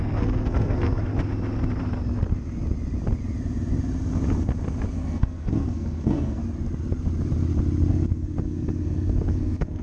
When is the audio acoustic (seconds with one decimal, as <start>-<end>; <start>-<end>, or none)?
1.1-4.9; 6.4-7.9